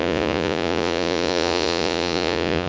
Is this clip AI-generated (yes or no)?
yes